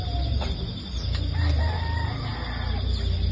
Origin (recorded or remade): recorded